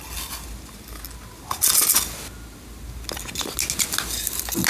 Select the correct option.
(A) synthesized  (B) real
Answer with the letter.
B